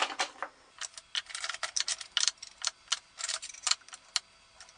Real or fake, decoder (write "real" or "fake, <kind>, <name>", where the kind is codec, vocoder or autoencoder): real